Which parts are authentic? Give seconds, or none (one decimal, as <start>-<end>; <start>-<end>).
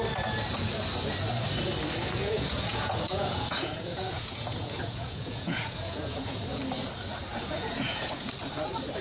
0.0-2.2; 6.6-7.3; 8.3-9.0